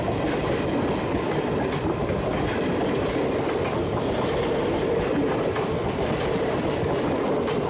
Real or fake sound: real